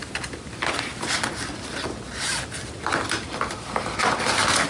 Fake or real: real